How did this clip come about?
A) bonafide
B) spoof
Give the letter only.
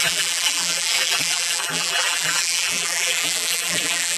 B